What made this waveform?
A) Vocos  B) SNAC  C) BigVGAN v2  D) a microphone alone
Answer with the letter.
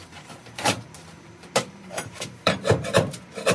C